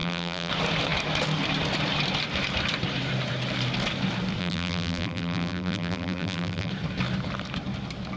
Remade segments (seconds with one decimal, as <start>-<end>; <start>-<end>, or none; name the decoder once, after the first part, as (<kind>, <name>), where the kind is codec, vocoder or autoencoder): 0.0-0.5 (vocoder, BigVGAN v2); 4.4-6.7